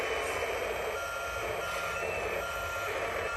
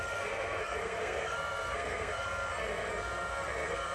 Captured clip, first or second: first